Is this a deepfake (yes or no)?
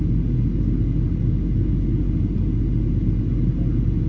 no